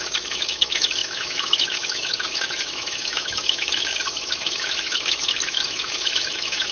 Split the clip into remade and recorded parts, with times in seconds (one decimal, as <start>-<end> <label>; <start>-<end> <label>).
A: 0.0-6.7 remade